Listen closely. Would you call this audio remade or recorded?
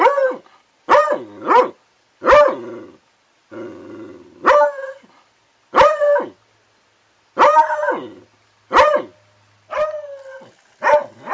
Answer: recorded